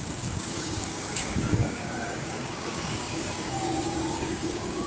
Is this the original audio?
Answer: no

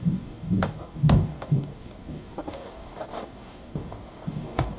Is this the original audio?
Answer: no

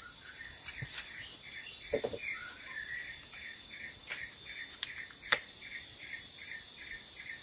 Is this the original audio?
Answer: yes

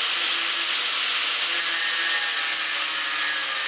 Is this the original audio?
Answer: yes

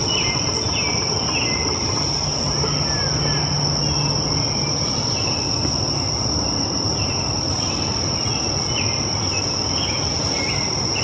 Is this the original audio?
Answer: yes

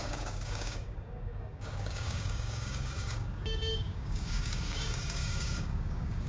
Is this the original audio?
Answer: no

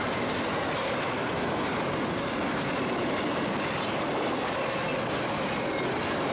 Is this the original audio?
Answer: yes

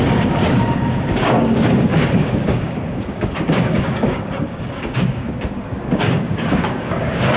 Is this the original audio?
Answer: no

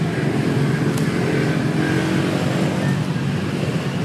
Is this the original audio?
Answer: yes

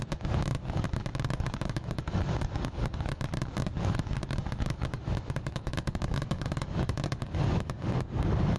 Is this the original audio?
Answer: no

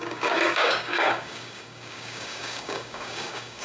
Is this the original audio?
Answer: no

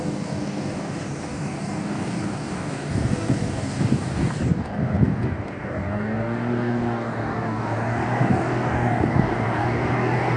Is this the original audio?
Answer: no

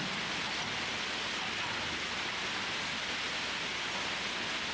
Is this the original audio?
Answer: yes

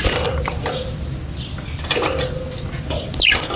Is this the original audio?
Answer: yes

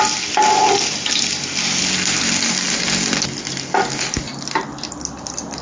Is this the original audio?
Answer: yes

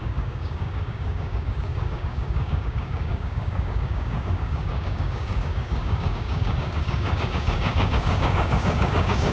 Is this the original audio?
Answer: no